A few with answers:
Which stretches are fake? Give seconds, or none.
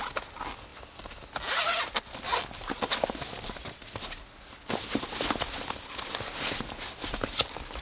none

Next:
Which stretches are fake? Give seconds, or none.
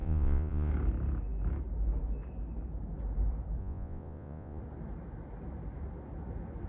0.0-0.7 (vocoder, Vocos); 3.6-4.6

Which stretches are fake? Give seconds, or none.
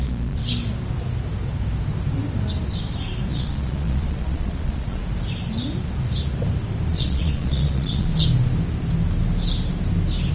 0.0-0.4 (vocoder, Vocos); 3.3-5.0; 6.9-8.1